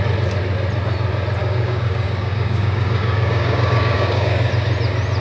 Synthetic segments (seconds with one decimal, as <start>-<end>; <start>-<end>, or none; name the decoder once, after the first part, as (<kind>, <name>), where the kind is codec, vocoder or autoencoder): 1.4-4.5 (codec, DAC)